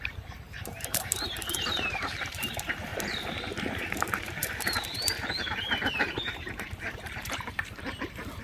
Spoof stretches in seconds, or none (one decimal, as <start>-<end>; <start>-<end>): 0.0-2.9; 3.7-8.4